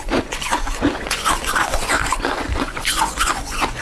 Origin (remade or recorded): remade